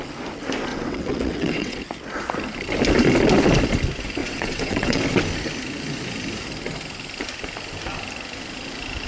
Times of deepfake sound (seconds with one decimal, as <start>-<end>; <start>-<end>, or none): 0.7-1.8; 4.2-5.0